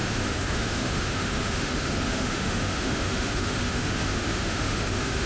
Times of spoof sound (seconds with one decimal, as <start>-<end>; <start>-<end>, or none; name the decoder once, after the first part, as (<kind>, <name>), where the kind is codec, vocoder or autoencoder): 0.0-5.3 (autoencoder, DAC-VAE)